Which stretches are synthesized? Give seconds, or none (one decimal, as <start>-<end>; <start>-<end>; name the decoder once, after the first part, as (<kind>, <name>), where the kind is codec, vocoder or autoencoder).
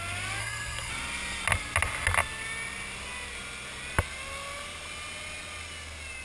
0.4-0.9 (codec, SNAC)